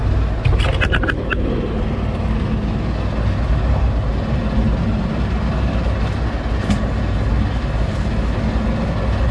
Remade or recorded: recorded